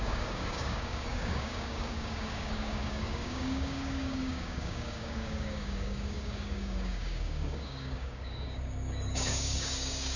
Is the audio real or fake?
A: fake